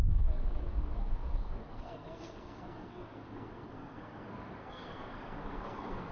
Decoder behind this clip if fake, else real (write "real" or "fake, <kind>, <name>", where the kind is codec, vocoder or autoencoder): fake, codec, SNAC